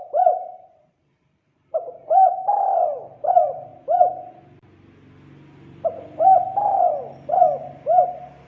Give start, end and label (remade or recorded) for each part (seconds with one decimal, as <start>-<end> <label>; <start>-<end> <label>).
0.0-3.7 remade; 3.7-6.8 recorded; 6.8-8.5 remade